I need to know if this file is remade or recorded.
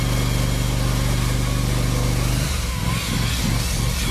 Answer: recorded